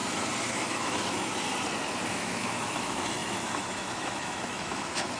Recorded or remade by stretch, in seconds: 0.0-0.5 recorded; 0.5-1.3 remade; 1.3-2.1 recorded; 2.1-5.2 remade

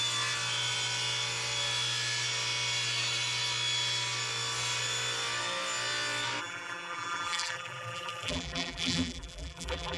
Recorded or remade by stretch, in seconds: 0.0-6.4 recorded; 6.4-10.0 remade